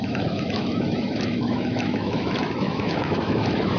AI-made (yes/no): yes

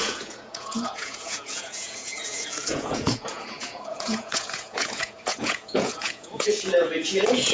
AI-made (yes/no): yes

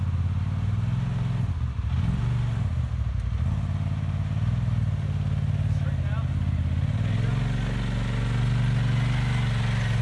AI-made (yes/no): no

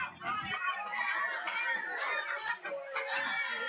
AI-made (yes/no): no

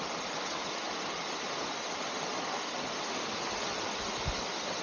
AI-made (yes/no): no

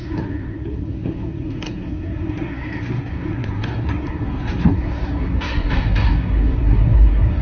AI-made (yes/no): yes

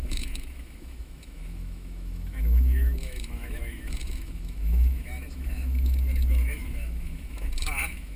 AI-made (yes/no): yes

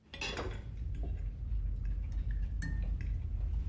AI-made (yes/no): no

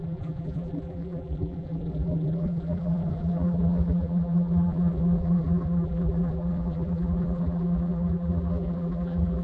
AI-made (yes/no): yes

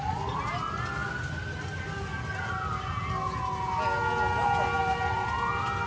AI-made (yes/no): no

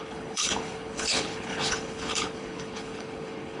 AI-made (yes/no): yes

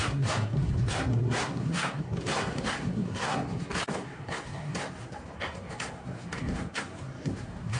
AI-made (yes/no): yes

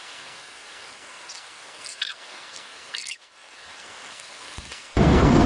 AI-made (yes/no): yes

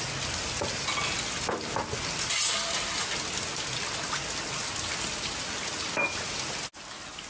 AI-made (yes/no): no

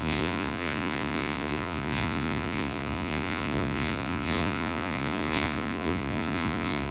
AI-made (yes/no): yes